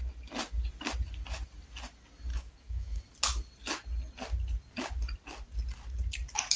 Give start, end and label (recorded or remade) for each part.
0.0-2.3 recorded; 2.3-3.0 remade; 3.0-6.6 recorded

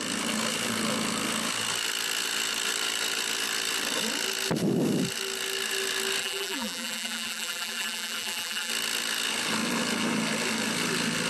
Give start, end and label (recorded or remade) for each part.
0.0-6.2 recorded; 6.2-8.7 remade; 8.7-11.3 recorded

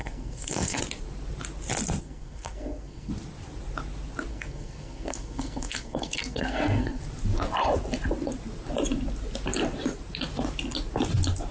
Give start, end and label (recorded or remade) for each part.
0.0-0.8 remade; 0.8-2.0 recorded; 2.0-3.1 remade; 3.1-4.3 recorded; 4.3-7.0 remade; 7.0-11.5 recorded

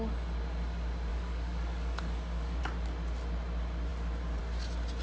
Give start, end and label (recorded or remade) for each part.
0.0-1.1 recorded; 1.1-2.6 remade; 2.6-5.0 recorded